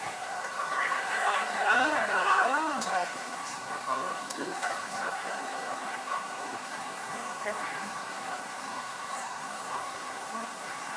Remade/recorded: remade